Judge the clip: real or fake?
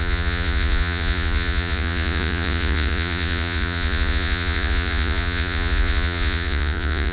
fake